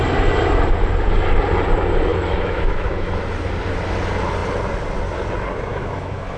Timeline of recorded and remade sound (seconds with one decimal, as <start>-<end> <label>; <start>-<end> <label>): 0.0-2.1 recorded; 2.1-3.1 remade; 3.1-5.7 recorded; 5.7-6.4 remade